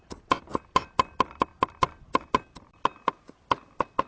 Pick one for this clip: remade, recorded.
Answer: recorded